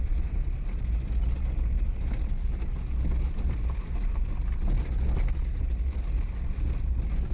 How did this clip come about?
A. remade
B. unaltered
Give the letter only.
B